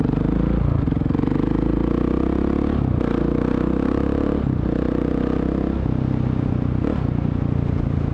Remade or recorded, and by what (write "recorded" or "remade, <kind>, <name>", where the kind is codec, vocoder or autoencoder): recorded